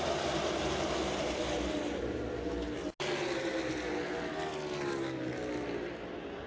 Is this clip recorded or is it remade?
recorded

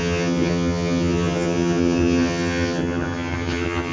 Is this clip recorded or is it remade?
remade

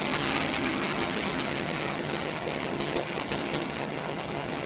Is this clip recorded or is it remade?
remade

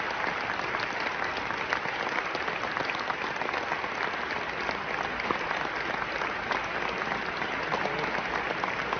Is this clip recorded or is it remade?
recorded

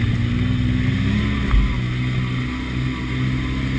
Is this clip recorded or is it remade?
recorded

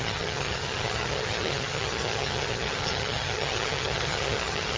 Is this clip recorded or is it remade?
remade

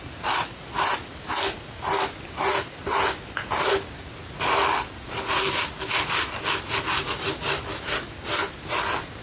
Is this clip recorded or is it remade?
recorded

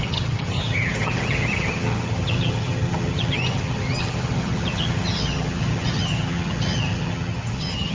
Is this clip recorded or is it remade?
remade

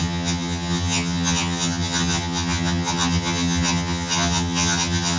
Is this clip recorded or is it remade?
remade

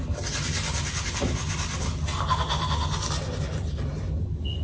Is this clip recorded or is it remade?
recorded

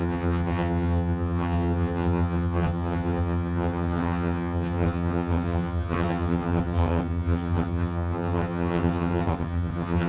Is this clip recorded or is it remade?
remade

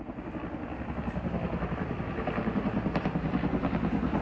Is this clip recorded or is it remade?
recorded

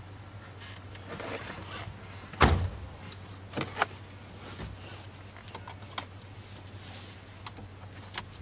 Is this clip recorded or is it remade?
recorded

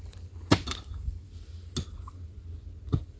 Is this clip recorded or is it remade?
recorded